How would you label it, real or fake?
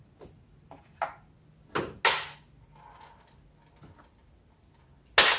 real